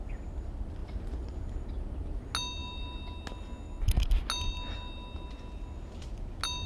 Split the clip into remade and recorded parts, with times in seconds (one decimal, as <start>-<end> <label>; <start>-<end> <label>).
0.0-6.7 recorded